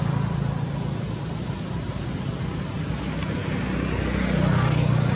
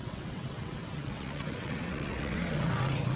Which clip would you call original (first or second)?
first